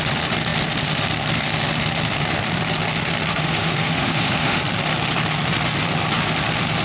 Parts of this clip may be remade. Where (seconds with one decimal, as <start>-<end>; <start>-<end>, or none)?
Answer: 3.3-4.6